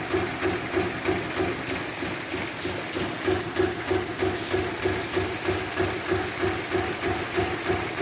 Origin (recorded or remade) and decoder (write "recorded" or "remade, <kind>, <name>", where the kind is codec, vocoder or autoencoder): recorded